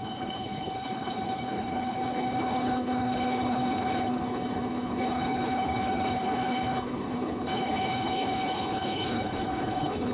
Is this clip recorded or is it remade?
remade